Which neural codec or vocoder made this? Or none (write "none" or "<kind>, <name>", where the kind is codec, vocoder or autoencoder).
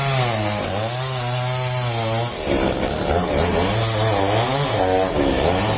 none